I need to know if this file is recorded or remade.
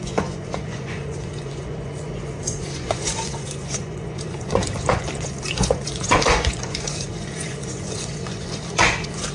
remade